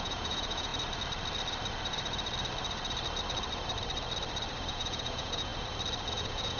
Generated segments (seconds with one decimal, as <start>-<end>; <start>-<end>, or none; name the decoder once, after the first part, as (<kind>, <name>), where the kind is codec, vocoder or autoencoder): 0.0-0.7 (vocoder, Vocos); 4.7-5.5; 6.1-6.6